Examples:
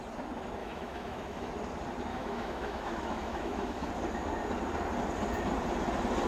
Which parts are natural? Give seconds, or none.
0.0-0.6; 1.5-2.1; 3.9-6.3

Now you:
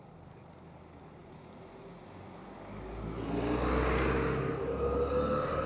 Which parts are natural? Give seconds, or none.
0.0-5.7